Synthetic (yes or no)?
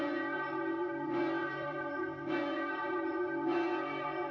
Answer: yes